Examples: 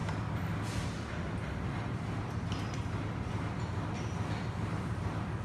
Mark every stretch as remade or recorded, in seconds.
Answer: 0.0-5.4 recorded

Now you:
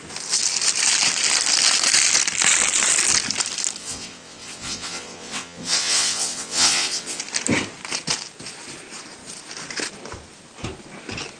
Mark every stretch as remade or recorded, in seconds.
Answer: 0.0-3.8 recorded; 3.8-7.2 remade; 7.2-11.4 recorded

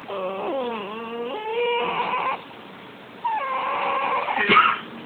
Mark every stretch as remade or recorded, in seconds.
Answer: 0.0-1.5 recorded; 1.5-4.4 remade; 4.4-5.1 recorded

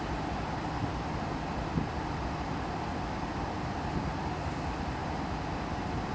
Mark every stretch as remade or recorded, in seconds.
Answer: 0.0-6.1 recorded